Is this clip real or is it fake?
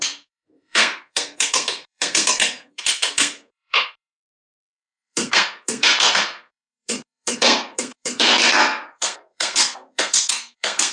fake